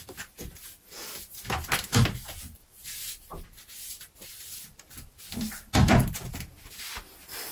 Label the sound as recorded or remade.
recorded